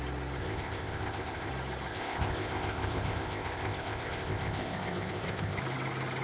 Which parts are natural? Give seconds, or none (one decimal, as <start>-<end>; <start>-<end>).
0.0-0.4; 1.5-1.9; 5.6-6.2

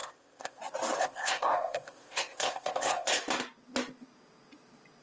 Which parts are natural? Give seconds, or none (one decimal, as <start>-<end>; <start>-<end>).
0.6-1.0; 3.2-5.0

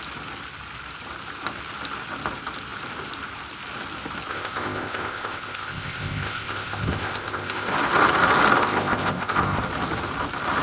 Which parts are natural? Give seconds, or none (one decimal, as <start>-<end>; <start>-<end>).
0.0-4.3; 7.7-8.6; 9.6-10.6

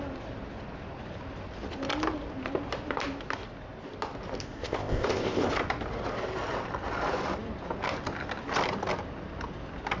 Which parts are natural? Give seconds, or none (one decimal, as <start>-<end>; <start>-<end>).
0.0-4.4; 5.5-10.0